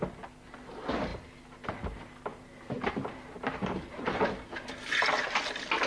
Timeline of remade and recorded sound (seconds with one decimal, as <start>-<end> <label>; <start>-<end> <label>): 0.0-1.1 recorded; 1.1-1.7 remade; 1.7-2.3 recorded; 2.3-4.7 remade; 4.7-5.9 recorded